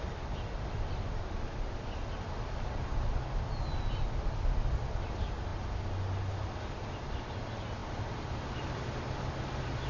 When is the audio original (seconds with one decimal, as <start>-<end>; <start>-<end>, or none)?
0.0-9.9